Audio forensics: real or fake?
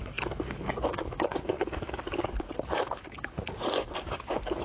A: fake